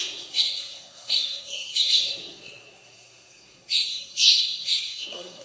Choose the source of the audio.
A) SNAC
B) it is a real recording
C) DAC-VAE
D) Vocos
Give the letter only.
A